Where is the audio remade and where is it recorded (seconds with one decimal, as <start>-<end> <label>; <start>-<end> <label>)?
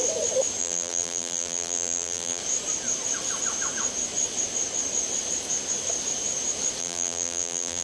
0.0-0.6 recorded; 0.6-2.4 remade; 2.4-6.8 recorded; 6.8-7.8 remade